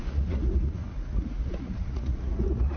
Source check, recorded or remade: remade